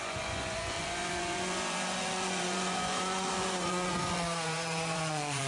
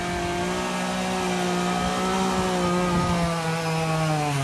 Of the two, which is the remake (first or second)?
first